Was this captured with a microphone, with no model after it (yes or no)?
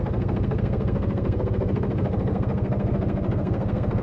no